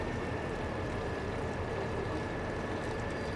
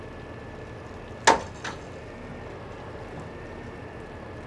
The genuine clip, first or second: second